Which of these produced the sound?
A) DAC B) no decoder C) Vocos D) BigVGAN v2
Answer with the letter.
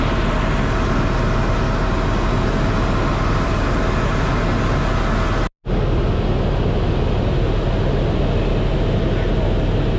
B